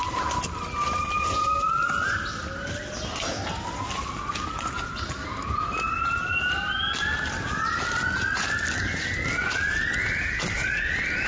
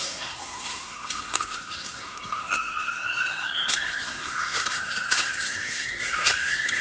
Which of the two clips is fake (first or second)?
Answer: second